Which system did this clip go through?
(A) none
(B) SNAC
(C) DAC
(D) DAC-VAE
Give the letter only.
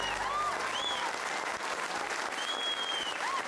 A